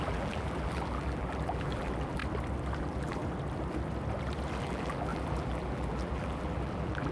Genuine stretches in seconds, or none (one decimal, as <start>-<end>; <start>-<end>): 2.2-2.8; 3.2-4.6